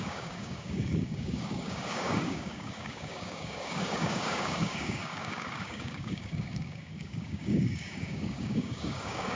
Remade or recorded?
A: remade